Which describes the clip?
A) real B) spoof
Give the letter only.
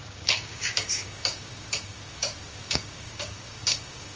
B